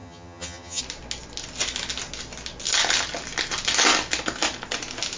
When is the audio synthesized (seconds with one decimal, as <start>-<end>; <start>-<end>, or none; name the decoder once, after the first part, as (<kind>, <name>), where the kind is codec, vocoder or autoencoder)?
0.0-0.8 (vocoder, HiFi-GAN)